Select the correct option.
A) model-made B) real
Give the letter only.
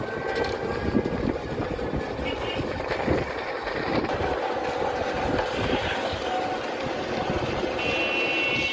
B